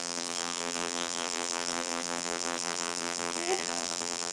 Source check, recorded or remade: remade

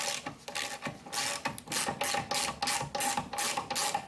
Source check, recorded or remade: recorded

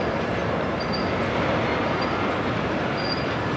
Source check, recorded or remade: recorded